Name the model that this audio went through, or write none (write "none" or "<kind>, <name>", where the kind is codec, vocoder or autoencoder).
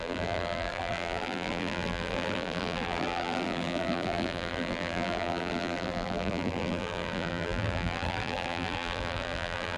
vocoder, BigVGAN v2